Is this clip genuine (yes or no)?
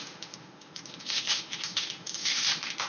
no